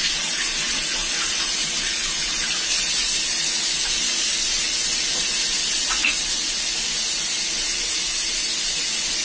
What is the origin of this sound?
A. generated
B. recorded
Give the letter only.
A